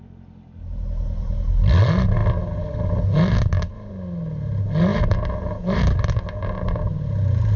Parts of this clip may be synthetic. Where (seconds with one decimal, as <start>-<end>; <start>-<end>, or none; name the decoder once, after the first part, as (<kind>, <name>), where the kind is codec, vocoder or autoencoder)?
none